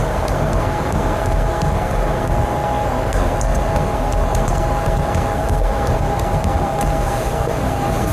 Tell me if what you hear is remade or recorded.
remade